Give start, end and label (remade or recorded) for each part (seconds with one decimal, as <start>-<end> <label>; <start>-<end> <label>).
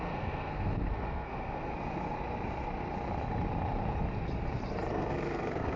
0.0-1.7 remade; 1.7-4.9 recorded; 4.9-5.8 remade